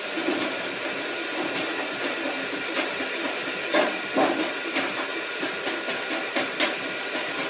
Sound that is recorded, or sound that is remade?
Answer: recorded